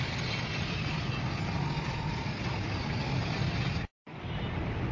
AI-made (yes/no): no